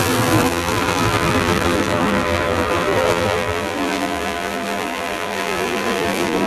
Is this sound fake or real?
fake